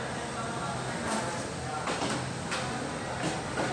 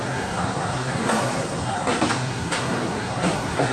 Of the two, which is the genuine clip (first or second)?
first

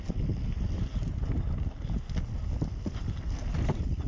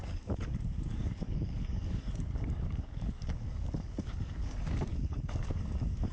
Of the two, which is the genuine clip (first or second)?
first